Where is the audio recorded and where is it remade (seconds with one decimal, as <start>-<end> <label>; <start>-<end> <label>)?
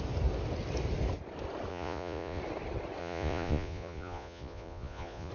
0.0-1.7 recorded; 1.7-2.4 remade; 2.4-3.0 recorded; 3.0-5.3 remade